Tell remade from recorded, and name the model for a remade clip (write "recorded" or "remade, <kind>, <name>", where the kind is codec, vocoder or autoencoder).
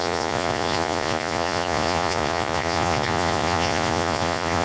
remade, vocoder, Vocos